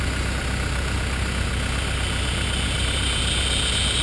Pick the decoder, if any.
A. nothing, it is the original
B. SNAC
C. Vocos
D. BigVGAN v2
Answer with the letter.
A